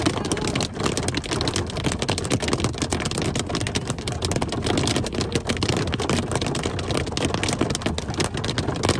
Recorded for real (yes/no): yes